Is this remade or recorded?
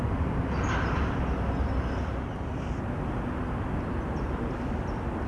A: recorded